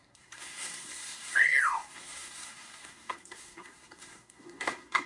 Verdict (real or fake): fake